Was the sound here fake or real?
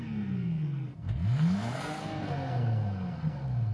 fake